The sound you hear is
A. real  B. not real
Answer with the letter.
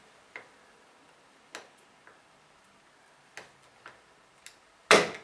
A